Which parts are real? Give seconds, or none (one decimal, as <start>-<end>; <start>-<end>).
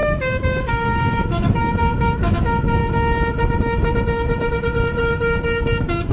0.0-0.7; 2.8-6.1